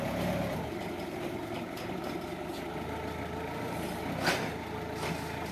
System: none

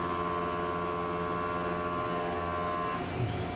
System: none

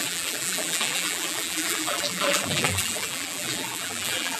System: vocoder, BigVGAN v2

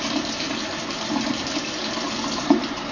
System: vocoder, BigVGAN v2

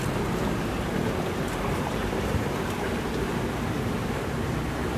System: vocoder, BigVGAN v2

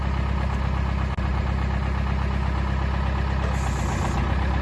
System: none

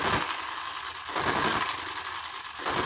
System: none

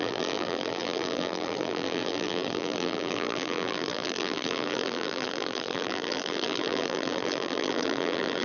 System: vocoder, BigVGAN v2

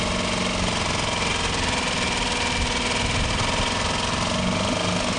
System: none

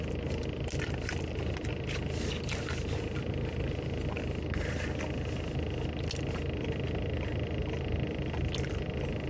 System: none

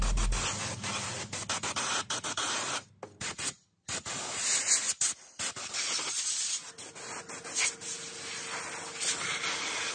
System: none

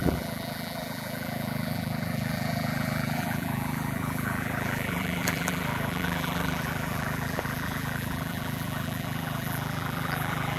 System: vocoder, BigVGAN v2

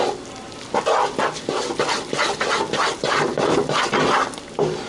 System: none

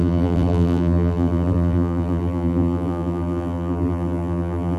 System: vocoder, BigVGAN v2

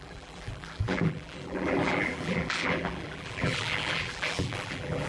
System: vocoder, BigVGAN v2